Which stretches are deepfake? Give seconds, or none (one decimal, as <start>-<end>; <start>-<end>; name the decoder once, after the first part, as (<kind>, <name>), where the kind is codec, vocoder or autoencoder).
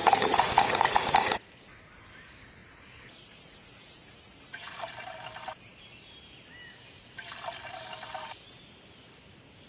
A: 0.0-1.4 (vocoder, Vocos); 2.6-4.9